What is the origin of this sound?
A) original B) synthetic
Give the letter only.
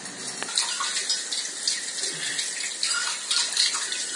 A